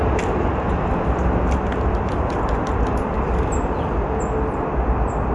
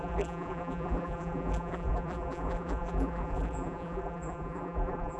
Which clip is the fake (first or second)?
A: second